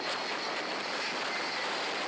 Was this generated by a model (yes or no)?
no